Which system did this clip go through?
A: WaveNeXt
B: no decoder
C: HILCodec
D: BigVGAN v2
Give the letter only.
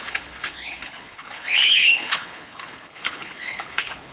C